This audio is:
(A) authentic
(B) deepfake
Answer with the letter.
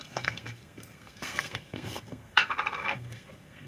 B